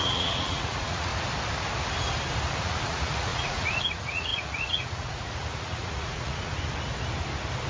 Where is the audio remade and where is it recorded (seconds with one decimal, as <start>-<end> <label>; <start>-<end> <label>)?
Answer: 0.0-1.1 remade; 1.1-2.6 recorded; 2.6-6.5 remade; 6.5-7.7 recorded